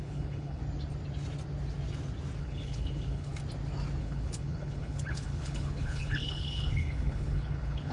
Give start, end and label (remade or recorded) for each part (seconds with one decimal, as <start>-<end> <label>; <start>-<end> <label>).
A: 0.0-0.6 remade; 0.6-2.4 recorded; 2.4-3.3 remade; 3.3-4.0 recorded; 4.0-7.9 remade

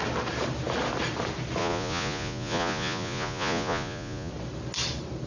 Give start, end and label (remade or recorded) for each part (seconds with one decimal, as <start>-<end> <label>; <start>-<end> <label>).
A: 0.0-1.6 recorded; 1.6-4.3 remade; 4.3-5.3 recorded